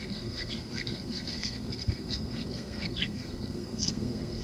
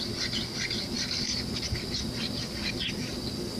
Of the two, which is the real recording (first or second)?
second